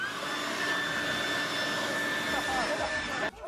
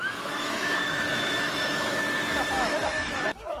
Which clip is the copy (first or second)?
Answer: second